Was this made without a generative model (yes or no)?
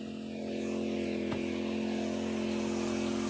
yes